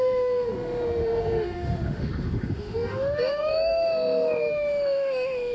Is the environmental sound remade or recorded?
remade